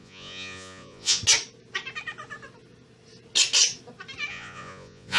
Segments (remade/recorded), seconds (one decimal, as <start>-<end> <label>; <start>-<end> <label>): 0.0-1.2 remade; 1.2-4.3 recorded; 4.3-5.2 remade